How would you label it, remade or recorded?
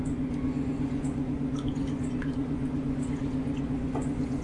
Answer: remade